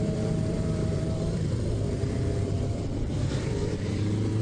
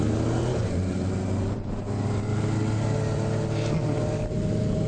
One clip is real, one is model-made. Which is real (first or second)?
second